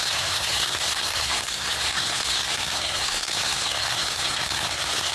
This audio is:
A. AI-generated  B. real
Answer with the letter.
A